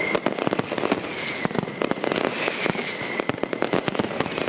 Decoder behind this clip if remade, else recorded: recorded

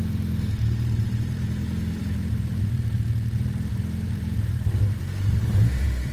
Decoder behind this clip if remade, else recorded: remade, vocoder, BigVGAN v2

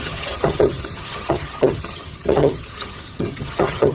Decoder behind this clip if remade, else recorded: remade, vocoder, HiFi-GAN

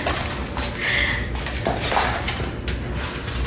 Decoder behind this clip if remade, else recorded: recorded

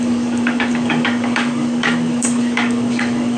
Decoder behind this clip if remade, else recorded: remade, codec, DAC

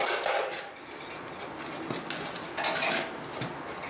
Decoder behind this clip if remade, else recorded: recorded